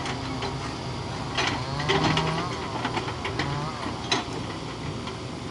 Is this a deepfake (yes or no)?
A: no